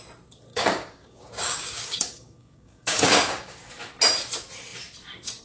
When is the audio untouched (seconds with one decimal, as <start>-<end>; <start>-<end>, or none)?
0.0-0.5; 3.7-5.4